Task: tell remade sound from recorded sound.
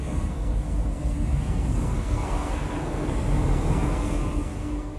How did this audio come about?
remade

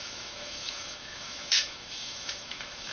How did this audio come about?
remade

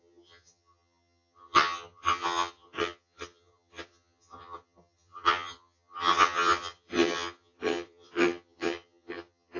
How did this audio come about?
remade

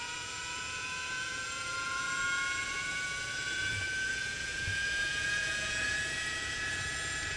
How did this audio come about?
remade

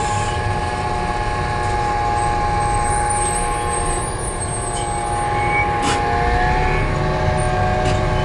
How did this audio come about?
recorded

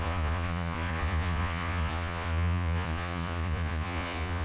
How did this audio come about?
remade